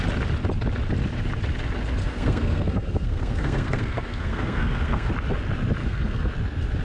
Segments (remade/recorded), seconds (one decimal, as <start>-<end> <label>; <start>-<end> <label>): 0.0-2.0 recorded; 2.0-5.1 remade; 5.1-5.8 recorded; 5.8-6.3 remade; 6.3-6.8 recorded